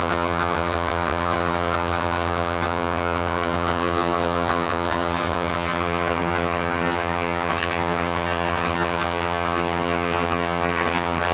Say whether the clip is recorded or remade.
remade